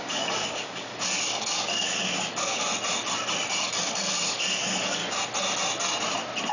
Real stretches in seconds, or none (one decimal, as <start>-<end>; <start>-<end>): 2.7-3.6; 5.0-6.5